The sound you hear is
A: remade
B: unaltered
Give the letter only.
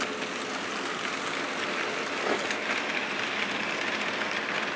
B